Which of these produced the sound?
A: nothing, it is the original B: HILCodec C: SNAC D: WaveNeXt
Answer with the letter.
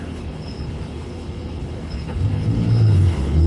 B